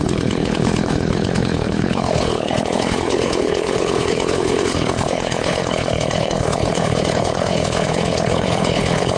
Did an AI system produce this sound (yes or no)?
yes